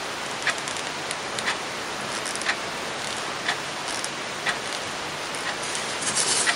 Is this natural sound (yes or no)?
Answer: yes